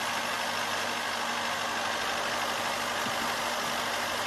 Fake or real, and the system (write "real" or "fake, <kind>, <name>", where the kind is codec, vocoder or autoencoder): real